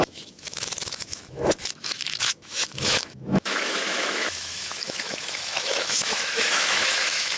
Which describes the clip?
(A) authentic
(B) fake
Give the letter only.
B